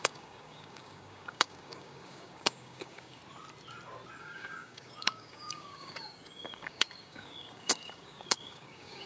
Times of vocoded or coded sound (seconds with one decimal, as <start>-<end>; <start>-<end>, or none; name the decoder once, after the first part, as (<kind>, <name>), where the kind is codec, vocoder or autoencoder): 0.0-3.2 (codec, DAC); 4.2-9.1